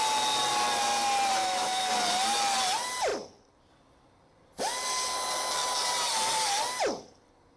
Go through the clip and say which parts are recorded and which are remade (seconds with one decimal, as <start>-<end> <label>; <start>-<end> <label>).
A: 0.0-1.4 recorded; 1.4-1.9 remade; 1.9-7.6 recorded